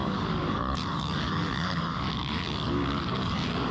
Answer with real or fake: fake